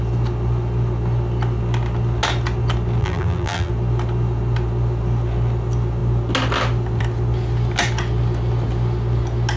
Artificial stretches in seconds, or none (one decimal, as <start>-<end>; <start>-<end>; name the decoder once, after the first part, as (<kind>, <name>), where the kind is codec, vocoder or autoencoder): 3.0-3.7 (vocoder, BigVGAN v2)